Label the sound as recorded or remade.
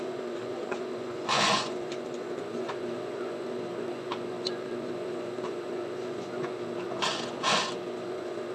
remade